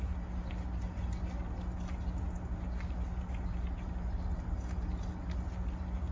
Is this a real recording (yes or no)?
yes